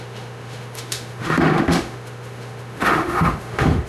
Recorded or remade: remade